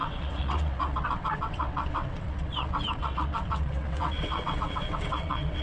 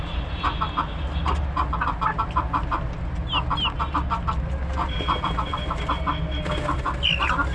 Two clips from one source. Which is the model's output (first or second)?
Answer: first